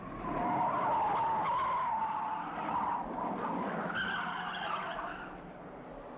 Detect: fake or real real